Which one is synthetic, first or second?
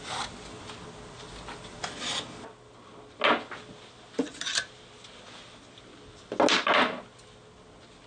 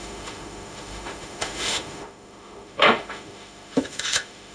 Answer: second